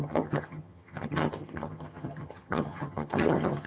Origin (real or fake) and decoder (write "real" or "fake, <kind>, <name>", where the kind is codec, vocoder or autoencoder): fake, vocoder, HiFi-GAN